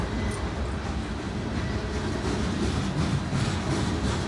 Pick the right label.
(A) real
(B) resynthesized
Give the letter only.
A